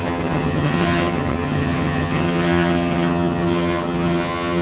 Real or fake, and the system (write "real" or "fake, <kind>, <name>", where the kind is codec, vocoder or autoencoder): fake, vocoder, HiFi-GAN